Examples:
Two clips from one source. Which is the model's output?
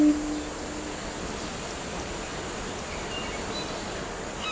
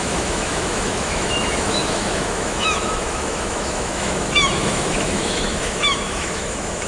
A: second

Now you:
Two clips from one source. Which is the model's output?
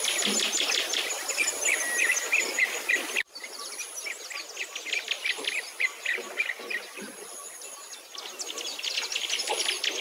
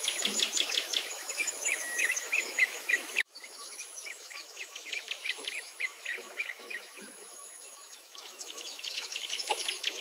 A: second